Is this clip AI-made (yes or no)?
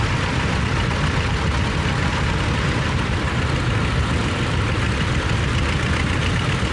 no